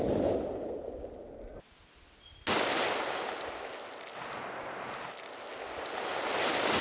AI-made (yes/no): no